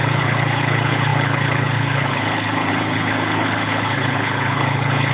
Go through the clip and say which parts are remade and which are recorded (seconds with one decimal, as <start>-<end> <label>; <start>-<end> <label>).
0.0-5.1 remade